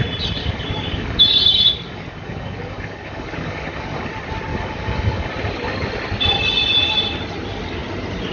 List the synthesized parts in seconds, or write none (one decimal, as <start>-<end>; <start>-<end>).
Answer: 0.4-4.1; 4.5-5.3